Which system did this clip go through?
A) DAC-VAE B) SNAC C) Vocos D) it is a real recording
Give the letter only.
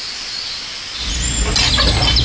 D